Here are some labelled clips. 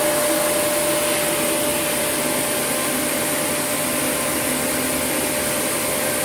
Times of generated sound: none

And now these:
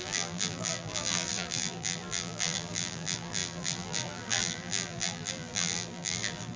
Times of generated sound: 0.0-6.6 (vocoder, BigVGAN v2)

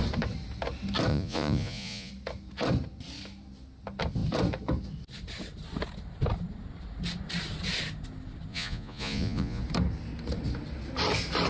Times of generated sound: 1.1-2.1 (vocoder, Vocos); 8.5-9.6

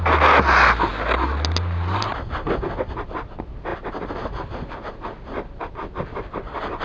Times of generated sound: none